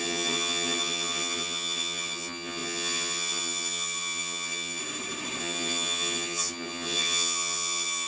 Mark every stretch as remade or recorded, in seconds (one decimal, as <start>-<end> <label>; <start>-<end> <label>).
0.0-4.8 remade; 4.8-5.4 recorded; 5.4-8.1 remade